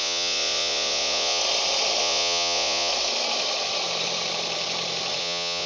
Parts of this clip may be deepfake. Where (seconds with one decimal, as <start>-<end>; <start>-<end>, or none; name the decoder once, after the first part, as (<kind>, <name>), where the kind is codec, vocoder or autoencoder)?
0.0-1.4 (vocoder, Vocos); 2.0-2.9; 5.2-5.7